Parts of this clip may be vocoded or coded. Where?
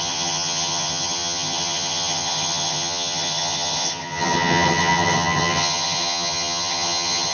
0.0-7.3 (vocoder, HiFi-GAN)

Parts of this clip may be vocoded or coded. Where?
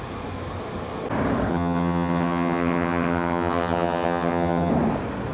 1.5-4.7 (vocoder, HiFi-GAN)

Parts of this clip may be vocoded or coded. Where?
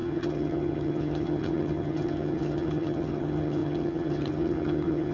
0.0-5.1 (vocoder, HiFi-GAN)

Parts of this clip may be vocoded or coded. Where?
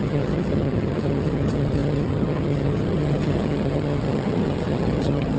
0.0-5.4 (vocoder, HiFi-GAN)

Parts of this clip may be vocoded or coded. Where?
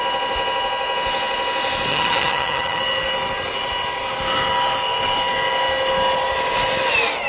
1.9-2.8 (vocoder, HiFi-GAN)